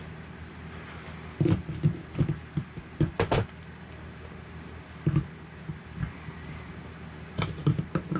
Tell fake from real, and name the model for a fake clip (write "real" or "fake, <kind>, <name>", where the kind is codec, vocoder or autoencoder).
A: real